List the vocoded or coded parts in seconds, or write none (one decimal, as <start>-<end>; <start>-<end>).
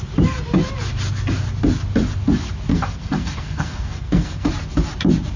2.7-4.5